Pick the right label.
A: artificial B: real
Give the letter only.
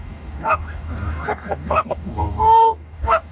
A